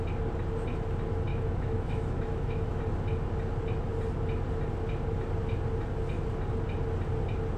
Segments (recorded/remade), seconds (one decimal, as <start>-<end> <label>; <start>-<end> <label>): 0.0-1.3 recorded; 1.3-2.8 remade; 2.8-7.6 recorded